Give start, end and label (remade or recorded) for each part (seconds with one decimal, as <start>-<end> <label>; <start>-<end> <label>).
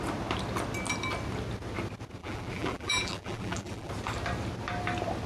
0.0-2.2 recorded; 2.2-3.9 remade; 3.9-5.3 recorded